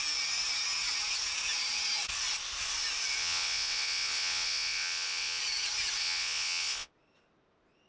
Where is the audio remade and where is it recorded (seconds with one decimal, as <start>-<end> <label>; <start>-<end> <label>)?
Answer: 0.0-3.2 recorded; 3.2-5.4 remade; 5.4-6.0 recorded; 6.0-6.9 remade; 6.9-7.9 recorded